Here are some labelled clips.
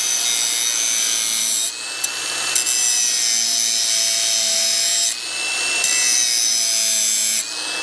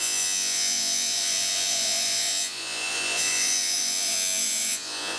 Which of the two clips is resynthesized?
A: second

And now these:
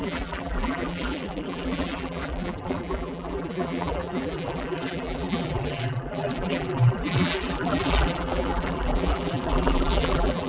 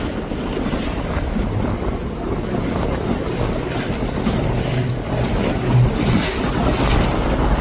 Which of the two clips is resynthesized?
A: first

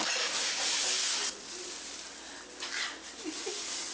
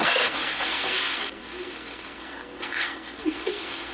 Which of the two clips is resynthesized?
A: second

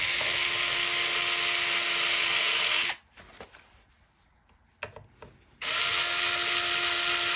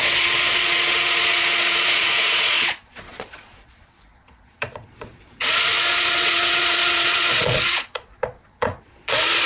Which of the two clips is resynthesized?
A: second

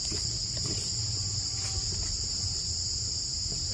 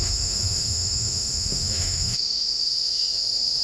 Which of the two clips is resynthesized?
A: second